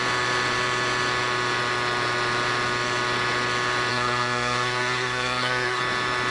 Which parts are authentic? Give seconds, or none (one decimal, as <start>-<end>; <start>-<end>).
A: 0.0-3.9; 5.8-6.3